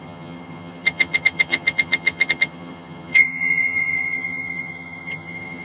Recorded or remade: remade